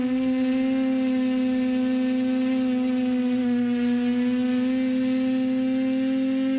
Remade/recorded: recorded